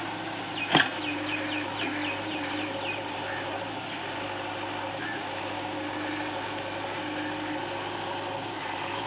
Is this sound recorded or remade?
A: recorded